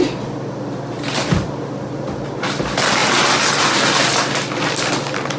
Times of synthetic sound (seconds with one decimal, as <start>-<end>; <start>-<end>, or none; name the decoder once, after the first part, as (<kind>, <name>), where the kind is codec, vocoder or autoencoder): none